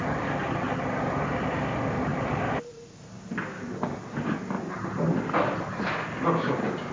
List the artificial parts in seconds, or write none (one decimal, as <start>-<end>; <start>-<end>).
none